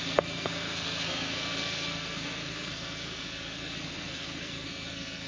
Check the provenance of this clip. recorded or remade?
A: remade